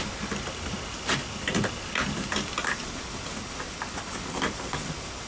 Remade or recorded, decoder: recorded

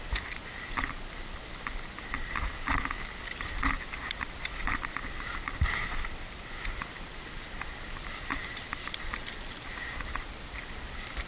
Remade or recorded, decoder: recorded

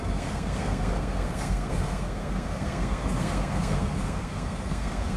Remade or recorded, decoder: remade, codec, SNAC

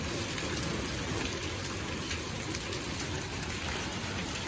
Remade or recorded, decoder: recorded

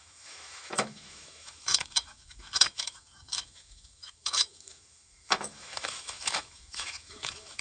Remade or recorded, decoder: remade, autoencoder, DAC-VAE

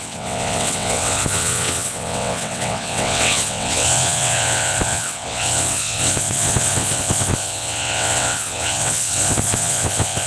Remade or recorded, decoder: remade, vocoder, WaveNeXt